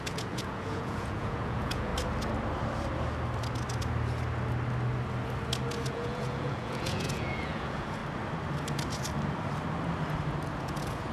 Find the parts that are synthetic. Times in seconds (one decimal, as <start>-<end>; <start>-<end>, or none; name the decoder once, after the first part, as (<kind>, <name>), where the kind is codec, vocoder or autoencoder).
0.0-1.9 (vocoder, Vocos); 5.9-8.0; 10.6-11.1